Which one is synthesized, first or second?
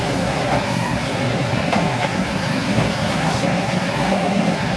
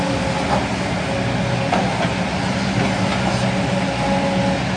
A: first